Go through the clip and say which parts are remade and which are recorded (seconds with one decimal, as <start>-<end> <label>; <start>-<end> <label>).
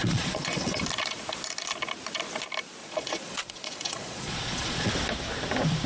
0.0-0.8 remade; 0.8-2.8 recorded; 2.8-4.9 remade; 4.9-5.9 recorded